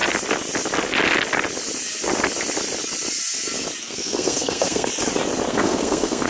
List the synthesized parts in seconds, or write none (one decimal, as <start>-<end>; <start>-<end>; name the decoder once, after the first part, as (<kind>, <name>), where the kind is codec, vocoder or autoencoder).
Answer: 3.8-4.9 (codec, SNAC); 5.5-6.3